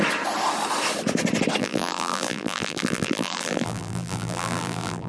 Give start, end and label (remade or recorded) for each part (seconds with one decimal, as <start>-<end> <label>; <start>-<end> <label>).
0.0-1.6 recorded; 1.6-5.1 remade